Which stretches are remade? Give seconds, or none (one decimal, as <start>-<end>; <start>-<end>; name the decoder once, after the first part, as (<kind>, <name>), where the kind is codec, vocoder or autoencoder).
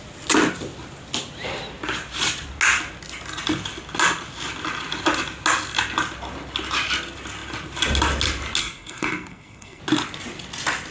8.6-9.8 (codec, SNAC)